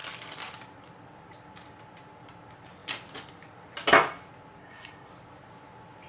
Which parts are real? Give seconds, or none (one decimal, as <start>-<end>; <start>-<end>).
0.0-4.6; 5.1-6.1